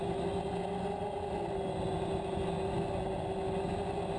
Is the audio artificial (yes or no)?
no